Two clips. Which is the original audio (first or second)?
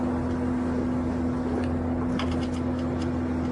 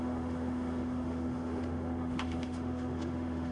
first